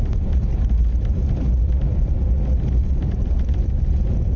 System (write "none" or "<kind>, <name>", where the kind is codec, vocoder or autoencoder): vocoder, BigVGAN v2